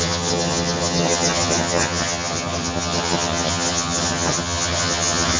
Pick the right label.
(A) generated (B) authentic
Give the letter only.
A